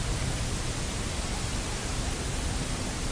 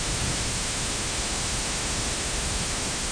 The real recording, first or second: first